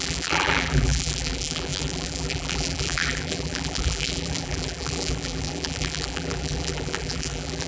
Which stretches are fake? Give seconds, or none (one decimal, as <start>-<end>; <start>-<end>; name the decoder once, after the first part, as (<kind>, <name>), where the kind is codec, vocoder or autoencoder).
0.0-7.7 (vocoder, BigVGAN v2)